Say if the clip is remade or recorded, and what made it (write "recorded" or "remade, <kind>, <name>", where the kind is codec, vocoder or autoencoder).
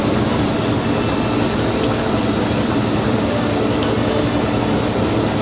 recorded